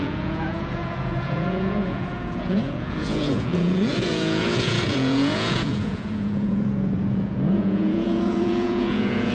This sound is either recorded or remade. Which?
remade